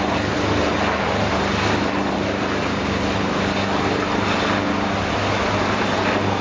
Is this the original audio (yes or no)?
yes